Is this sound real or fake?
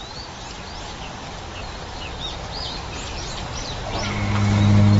real